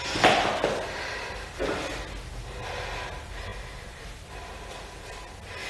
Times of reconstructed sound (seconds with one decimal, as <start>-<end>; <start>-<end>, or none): none